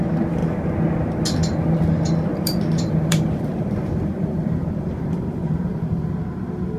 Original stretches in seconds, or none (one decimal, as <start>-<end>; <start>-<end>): 0.0-2.3; 6.0-6.8